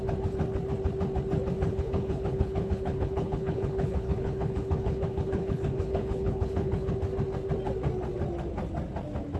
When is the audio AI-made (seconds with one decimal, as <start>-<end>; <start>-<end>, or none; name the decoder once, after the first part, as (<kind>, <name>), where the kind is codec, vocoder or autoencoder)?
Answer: 1.7-6.9 (codec, HILCodec)